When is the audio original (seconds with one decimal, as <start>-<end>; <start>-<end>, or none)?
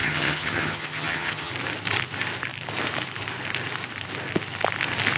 1.5-5.2